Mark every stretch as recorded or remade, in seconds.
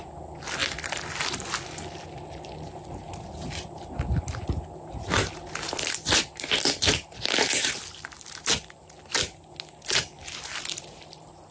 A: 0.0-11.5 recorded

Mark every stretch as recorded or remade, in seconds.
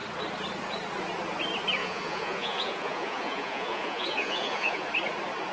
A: 0.0-1.8 recorded; 1.8-4.9 remade; 4.9-5.5 recorded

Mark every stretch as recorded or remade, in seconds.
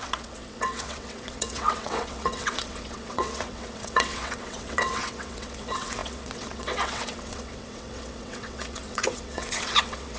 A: 0.0-10.2 remade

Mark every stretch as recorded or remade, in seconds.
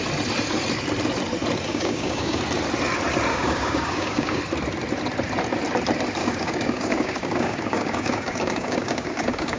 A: 0.0-1.7 recorded; 1.7-2.4 remade; 2.4-3.3 recorded; 3.3-4.4 remade; 4.4-6.2 recorded; 6.2-9.6 remade